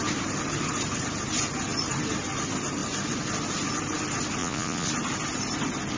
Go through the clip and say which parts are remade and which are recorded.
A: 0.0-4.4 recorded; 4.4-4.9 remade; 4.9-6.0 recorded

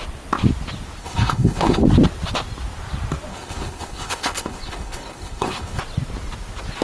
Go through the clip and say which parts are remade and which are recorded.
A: 0.0-1.0 recorded; 1.0-1.8 remade; 1.8-3.3 recorded; 3.3-5.8 remade; 5.8-6.8 recorded